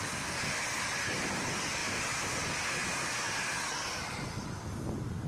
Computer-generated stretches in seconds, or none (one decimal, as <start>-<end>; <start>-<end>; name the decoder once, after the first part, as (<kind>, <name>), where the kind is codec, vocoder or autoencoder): none